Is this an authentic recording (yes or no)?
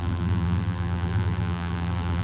no